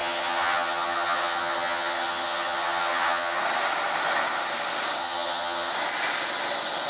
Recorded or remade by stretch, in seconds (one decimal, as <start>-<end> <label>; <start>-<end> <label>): 0.0-3.4 remade; 3.4-5.0 recorded; 5.0-5.7 remade; 5.7-6.9 recorded